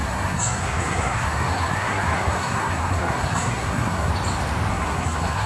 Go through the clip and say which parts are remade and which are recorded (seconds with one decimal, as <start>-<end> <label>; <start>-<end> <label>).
0.0-4.1 remade; 4.1-4.7 recorded; 4.7-5.5 remade